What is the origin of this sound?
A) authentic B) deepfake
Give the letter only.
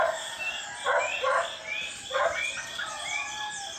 A